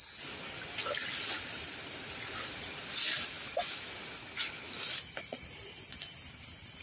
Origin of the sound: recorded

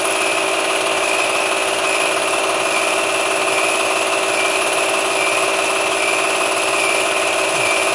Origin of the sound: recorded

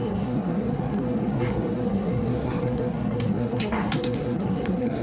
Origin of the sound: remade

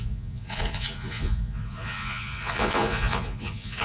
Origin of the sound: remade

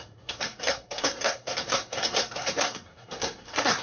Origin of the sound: remade